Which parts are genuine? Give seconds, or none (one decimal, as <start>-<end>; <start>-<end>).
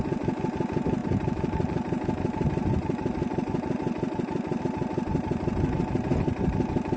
0.0-1.0; 4.6-5.1; 5.8-7.0